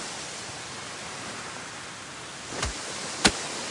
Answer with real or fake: real